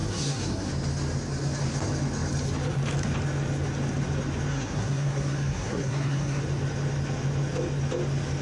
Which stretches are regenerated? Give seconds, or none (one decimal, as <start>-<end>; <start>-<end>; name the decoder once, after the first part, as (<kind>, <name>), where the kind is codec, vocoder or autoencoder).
0.0-0.7 (codec, SNAC); 4.5-6.4